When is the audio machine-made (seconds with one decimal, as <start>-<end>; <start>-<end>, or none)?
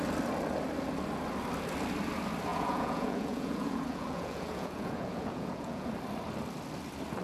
2.5-5.9